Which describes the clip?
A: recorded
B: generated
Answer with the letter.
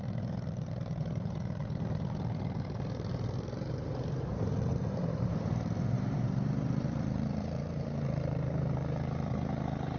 B